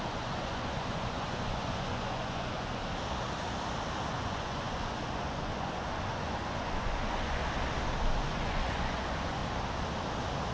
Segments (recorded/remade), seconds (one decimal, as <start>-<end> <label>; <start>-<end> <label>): 0.0-2.8 remade; 2.8-4.1 recorded; 4.1-7.4 remade; 7.4-8.2 recorded; 8.2-9.4 remade; 9.4-10.5 recorded